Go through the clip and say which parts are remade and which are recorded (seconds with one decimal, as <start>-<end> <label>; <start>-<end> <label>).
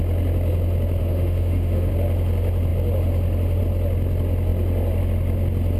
0.0-1.0 recorded; 1.0-1.9 remade; 1.9-5.8 recorded